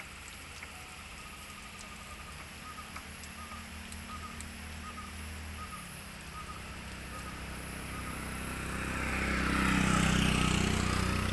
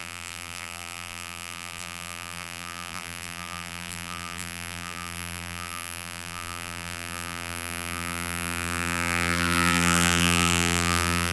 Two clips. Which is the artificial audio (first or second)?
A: second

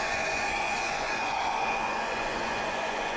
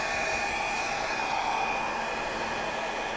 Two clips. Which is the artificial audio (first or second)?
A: first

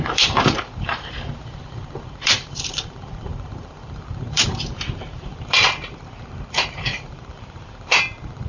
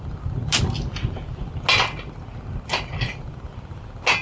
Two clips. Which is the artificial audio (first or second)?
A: first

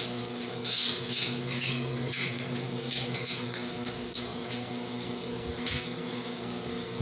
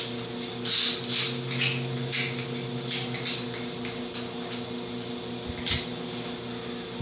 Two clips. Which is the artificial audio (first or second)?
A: first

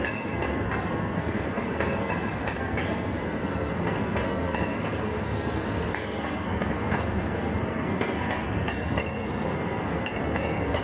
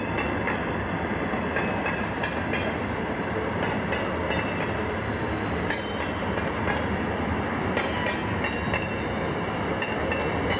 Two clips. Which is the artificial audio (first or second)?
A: first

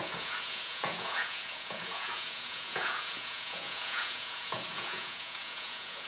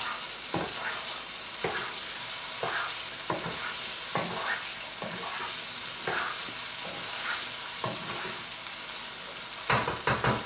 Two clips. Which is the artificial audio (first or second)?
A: first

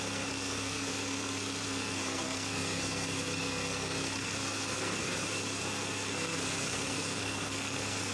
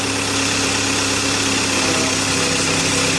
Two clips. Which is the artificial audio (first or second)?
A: first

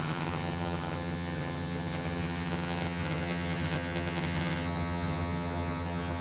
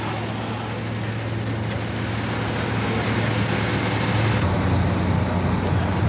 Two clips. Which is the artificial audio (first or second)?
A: first